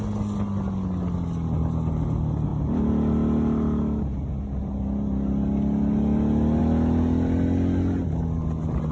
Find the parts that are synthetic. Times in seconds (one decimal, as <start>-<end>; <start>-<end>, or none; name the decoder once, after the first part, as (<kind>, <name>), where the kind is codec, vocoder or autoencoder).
none